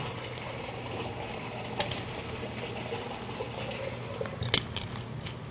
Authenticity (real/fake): real